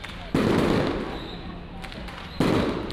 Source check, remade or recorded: recorded